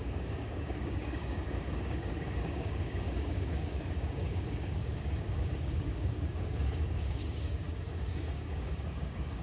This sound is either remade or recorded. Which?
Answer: remade